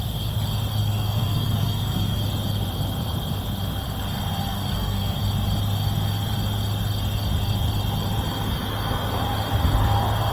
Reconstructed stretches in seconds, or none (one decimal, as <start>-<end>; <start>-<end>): 0.8-2.2; 4.5-5.2